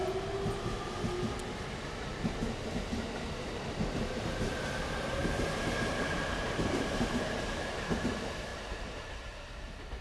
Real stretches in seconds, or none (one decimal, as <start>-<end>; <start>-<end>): 0.0-3.7; 5.2-5.9